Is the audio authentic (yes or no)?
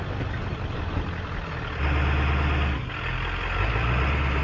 yes